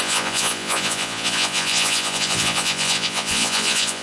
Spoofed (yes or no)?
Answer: yes